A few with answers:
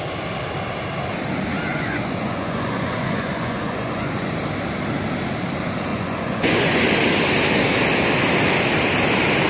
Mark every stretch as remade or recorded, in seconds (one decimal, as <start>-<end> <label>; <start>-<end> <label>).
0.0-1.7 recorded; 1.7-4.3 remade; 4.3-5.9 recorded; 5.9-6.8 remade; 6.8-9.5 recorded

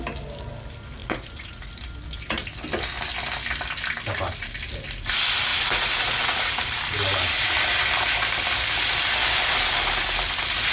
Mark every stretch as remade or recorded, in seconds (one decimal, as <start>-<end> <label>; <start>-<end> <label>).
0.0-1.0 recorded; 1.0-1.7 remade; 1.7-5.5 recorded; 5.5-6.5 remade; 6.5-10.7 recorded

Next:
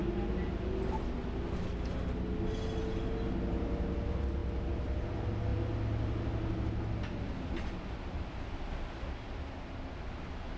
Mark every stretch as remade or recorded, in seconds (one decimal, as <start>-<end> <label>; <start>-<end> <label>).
0.0-10.6 recorded